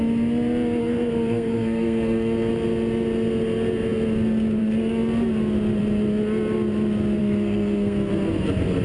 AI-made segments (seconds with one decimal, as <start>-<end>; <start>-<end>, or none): 0.8-2.5; 7.2-8.1